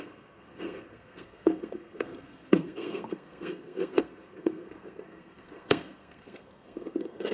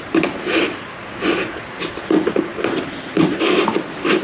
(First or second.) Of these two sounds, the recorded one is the second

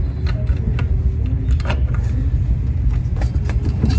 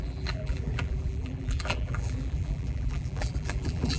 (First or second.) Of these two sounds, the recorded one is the first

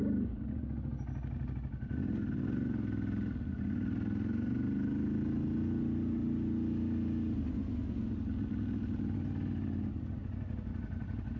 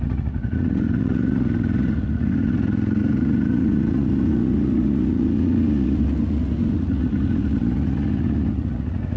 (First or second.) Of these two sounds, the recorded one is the first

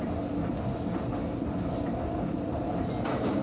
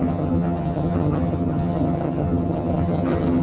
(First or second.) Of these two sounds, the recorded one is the first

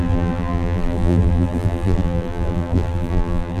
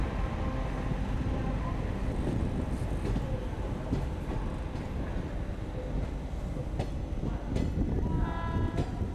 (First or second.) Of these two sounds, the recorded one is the second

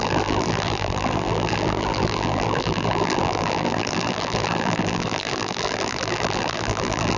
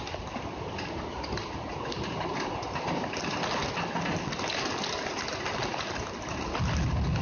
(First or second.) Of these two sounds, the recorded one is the second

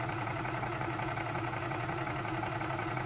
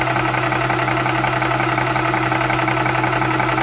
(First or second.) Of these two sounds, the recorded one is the second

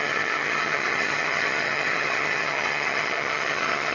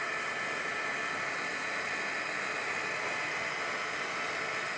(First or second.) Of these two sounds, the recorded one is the second